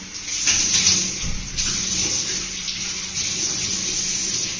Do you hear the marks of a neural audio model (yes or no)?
no